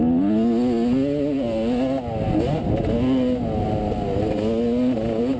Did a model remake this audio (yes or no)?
no